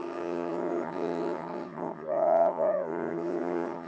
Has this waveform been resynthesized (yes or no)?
yes